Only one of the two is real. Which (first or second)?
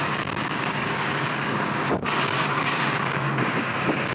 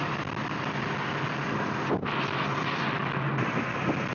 second